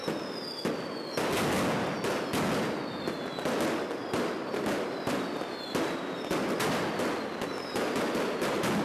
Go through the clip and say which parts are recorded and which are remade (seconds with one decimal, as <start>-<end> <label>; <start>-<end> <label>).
0.0-8.8 recorded